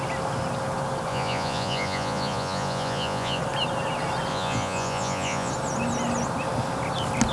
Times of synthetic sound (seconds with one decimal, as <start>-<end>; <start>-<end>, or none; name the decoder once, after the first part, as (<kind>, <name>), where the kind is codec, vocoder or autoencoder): 1.1-3.4 (vocoder, Vocos); 4.3-5.5